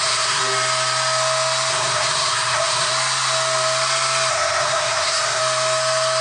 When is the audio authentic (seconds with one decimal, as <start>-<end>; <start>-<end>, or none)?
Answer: 0.4-1.7; 2.9-4.3; 5.4-6.2